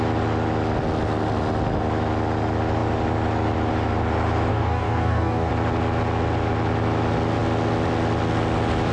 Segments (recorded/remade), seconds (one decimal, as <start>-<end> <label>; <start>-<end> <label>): 0.0-4.5 recorded; 4.5-5.5 remade; 5.5-8.9 recorded

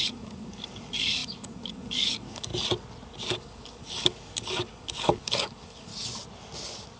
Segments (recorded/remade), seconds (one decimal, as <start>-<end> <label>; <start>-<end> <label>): 0.0-2.5 remade; 2.5-3.3 recorded; 3.3-5.9 remade; 5.9-7.0 recorded

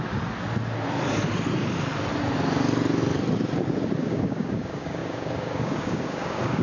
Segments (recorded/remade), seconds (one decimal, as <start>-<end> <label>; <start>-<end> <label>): 0.0-4.0 recorded; 4.0-6.6 remade

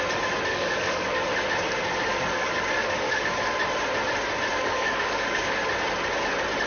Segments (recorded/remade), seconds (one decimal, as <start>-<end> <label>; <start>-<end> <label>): 0.0-0.5 recorded; 0.5-1.1 remade; 1.1-2.1 recorded; 2.1-3.3 remade; 3.3-4.5 recorded; 4.5-5.6 remade; 5.6-6.7 recorded